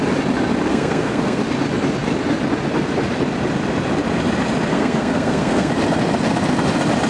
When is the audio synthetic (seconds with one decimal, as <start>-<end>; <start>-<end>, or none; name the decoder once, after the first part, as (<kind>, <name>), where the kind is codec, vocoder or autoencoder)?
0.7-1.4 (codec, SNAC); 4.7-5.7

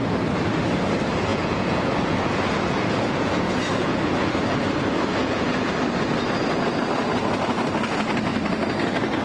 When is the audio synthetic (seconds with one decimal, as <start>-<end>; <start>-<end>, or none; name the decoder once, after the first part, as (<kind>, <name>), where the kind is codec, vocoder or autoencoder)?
1.3-4.3 (vocoder, Vocos); 5.2-5.7

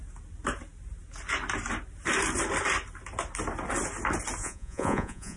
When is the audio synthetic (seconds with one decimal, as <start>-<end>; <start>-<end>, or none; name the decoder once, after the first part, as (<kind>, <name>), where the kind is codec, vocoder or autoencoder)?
4.4-5.4 (vocoder, Vocos)